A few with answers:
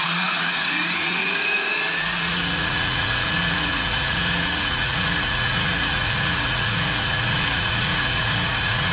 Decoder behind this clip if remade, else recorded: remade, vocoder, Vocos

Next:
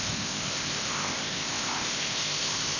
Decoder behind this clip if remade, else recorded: remade, codec, ZipCodec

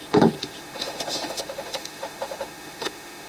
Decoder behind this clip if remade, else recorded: remade, autoencoder, DAC-VAE